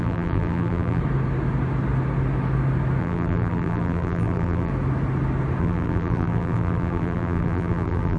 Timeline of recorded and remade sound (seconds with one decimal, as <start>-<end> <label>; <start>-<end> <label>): 0.0-1.0 remade; 1.0-3.0 recorded; 3.0-4.7 remade; 4.7-5.6 recorded; 5.6-8.2 remade